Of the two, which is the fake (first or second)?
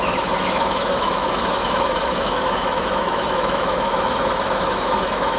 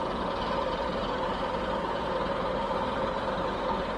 first